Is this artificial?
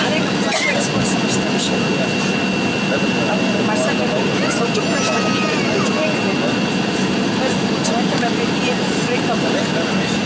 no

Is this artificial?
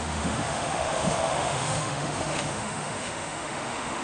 yes